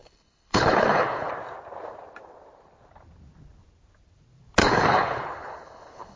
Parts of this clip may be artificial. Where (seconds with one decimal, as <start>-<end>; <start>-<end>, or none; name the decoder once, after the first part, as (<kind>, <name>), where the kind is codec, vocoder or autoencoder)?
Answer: 0.0-1.3 (codec, HILCodec); 4.6-6.2